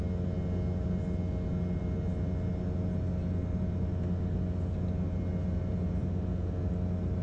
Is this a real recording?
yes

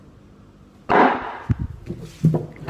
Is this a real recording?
yes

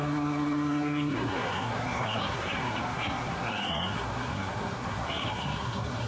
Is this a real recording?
no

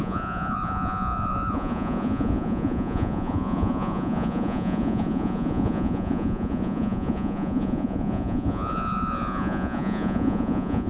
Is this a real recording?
no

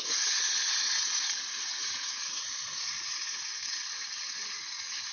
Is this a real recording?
no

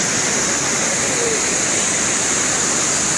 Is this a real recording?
yes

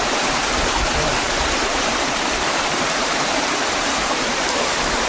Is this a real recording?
no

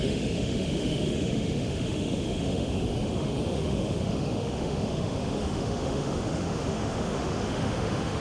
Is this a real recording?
no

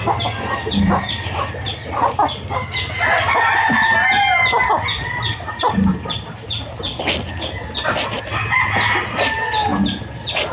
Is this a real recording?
yes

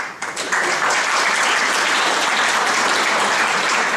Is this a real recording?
yes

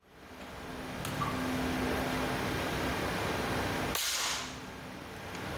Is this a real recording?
yes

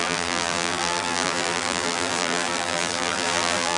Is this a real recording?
no